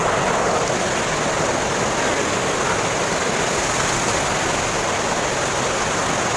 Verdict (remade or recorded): recorded